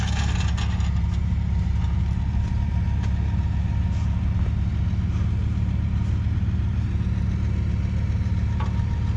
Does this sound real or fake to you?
real